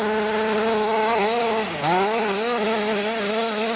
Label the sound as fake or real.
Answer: real